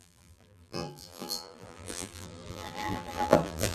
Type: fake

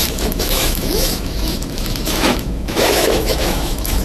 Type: fake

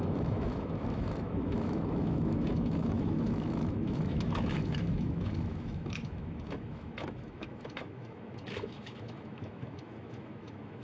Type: fake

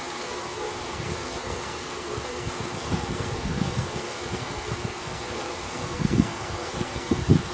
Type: fake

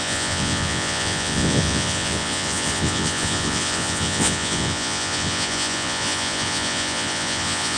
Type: fake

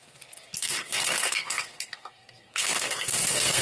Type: fake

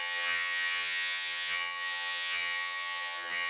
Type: fake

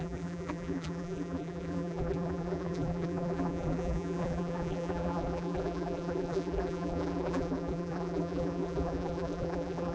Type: fake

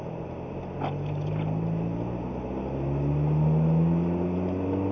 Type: real